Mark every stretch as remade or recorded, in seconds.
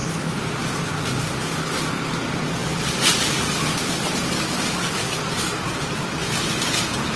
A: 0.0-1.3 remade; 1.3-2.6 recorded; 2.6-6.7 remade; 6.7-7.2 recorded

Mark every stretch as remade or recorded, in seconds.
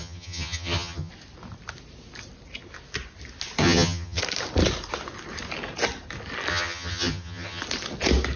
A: 0.0-1.1 remade; 1.1-3.6 recorded; 3.6-4.2 remade; 4.2-6.5 recorded; 6.5-7.6 remade; 7.6-8.4 recorded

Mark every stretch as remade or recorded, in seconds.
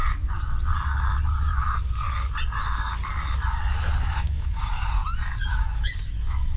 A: 0.0-4.0 recorded; 4.0-5.0 remade; 5.0-5.5 recorded; 5.5-6.6 remade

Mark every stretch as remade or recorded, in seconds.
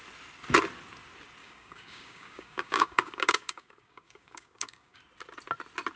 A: 0.0-1.4 recorded; 1.4-5.0 remade; 5.0-6.0 recorded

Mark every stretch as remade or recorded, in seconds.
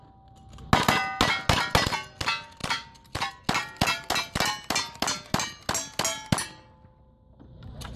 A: 0.0-2.6 recorded; 2.6-3.3 remade; 3.3-8.0 recorded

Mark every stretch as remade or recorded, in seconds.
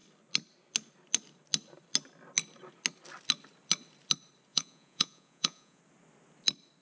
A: 0.0-4.5 recorded; 4.5-5.8 remade; 5.8-6.8 recorded